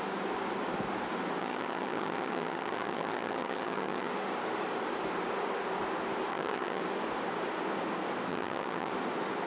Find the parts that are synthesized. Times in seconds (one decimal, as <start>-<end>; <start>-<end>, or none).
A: 1.4-4.1; 6.3-6.8; 8.3-8.9